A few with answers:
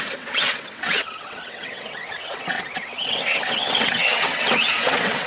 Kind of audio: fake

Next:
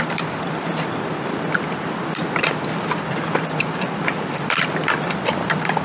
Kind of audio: fake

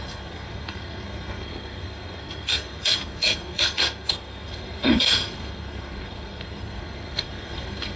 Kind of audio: fake